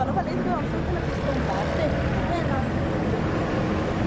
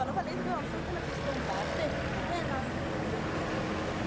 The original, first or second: second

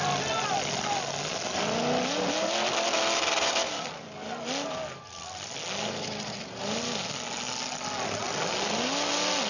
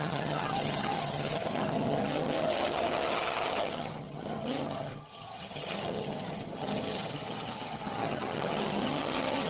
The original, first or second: first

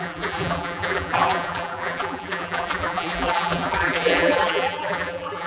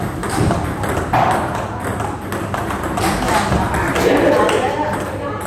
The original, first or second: second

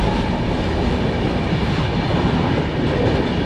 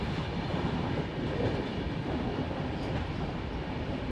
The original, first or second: first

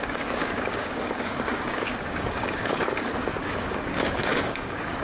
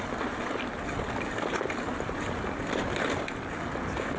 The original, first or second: second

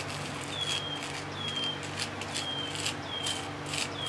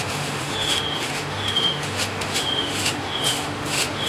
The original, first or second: first